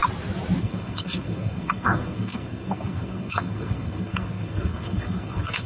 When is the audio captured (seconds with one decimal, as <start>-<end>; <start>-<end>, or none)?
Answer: 0.0-0.6